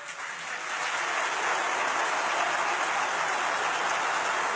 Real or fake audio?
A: real